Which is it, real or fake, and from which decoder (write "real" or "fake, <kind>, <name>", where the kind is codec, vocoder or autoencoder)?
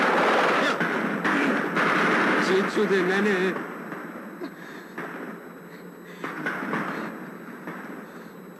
real